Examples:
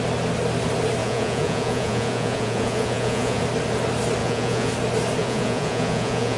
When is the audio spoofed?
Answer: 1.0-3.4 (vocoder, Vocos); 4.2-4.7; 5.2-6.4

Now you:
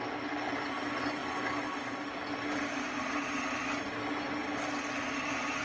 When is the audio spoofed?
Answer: none

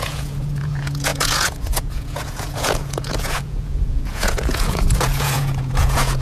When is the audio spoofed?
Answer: 0.0-6.2 (vocoder, Vocos)

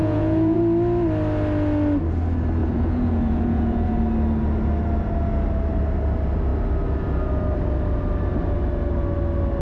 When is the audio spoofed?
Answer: 0.0-0.6 (vocoder, Vocos); 2.6-4.0

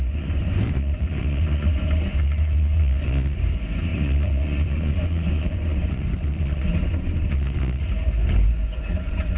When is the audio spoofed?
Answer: 0.0-9.4 (vocoder, Vocos)

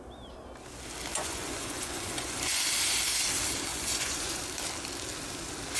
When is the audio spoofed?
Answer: 1.1-2.6 (vocoder, Vocos); 3.7-4.4

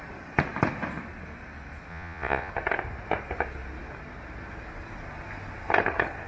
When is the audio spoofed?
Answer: 1.9-2.5 (vocoder, Vocos)